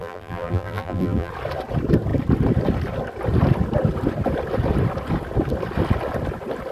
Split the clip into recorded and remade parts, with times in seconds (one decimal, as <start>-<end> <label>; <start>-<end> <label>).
0.0-1.3 remade; 1.3-6.7 recorded